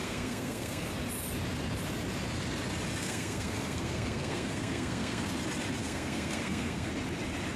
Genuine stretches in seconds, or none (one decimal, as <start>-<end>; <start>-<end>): 0.9-3.0; 5.3-5.8; 6.9-7.6